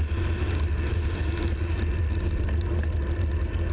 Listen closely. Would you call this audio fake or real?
real